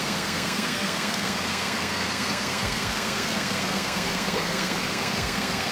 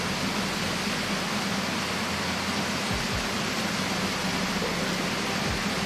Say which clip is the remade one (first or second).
first